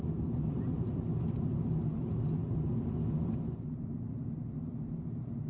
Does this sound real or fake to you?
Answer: real